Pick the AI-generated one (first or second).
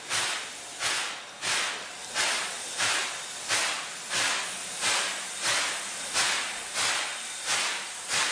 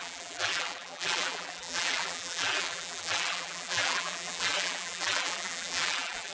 second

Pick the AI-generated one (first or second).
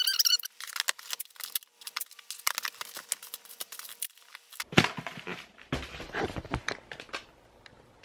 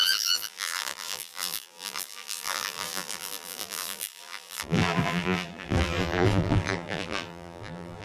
second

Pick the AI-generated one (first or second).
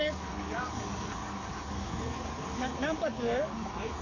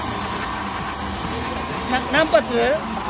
first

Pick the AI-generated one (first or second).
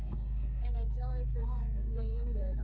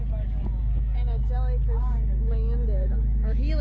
first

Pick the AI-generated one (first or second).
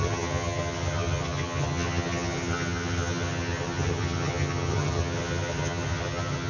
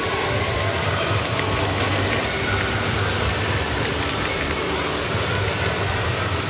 first